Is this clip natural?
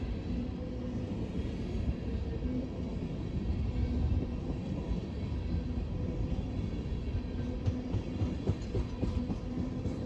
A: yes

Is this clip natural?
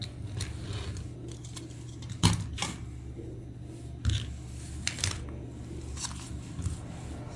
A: yes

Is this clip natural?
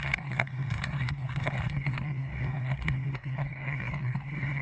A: no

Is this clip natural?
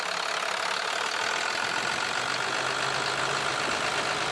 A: yes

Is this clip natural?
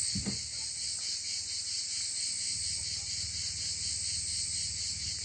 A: yes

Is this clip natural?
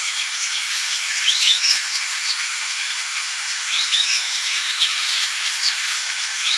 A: no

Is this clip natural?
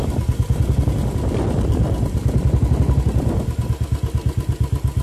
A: yes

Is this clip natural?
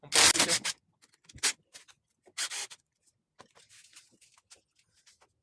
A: yes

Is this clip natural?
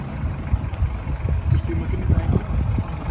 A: yes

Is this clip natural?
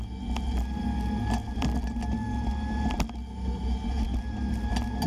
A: yes